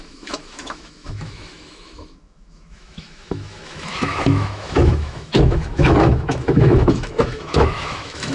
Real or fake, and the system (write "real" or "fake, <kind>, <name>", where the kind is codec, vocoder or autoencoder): fake, autoencoder, DAC-VAE